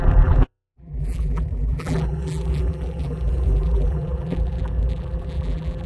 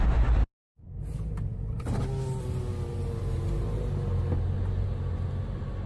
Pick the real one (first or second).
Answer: second